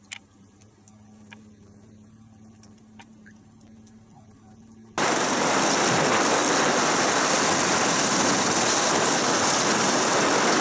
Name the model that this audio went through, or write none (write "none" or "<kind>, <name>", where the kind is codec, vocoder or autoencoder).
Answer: none